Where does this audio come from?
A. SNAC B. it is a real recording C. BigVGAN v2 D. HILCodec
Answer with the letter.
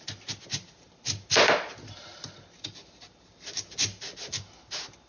B